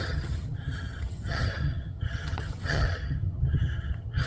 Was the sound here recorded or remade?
remade